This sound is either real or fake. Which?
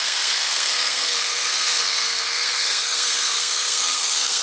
fake